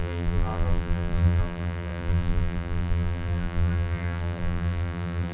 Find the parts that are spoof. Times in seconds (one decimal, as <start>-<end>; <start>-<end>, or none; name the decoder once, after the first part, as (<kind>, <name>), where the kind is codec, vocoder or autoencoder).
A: 0.0-5.3 (vocoder, BigVGAN v2)